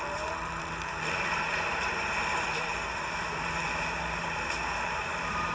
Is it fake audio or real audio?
fake